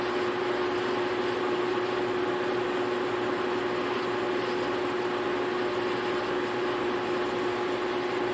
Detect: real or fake real